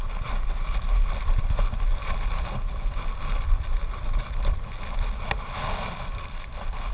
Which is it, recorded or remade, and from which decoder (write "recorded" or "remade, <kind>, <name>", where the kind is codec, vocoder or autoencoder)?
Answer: recorded